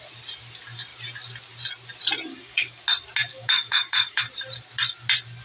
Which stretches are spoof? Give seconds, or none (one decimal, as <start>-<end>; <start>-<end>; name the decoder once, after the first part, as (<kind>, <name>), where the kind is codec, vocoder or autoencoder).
2.3-2.8 (codec, DAC); 3.3-4.2